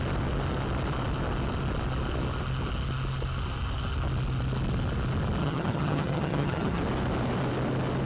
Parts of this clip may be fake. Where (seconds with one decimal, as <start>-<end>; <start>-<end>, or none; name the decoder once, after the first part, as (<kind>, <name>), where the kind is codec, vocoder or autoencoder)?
5.4-6.8 (vocoder, HiFi-GAN)